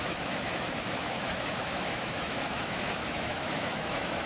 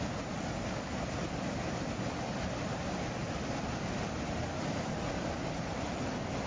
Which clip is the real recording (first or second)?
second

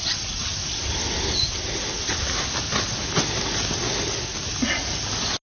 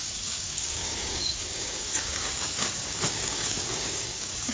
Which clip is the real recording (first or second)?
first